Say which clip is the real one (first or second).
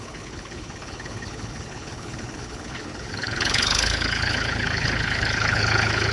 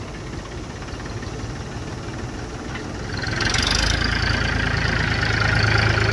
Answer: second